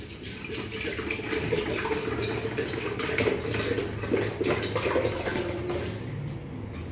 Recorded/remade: recorded